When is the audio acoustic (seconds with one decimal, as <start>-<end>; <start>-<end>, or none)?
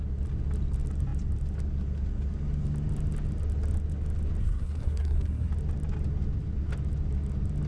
0.0-4.4; 5.5-7.7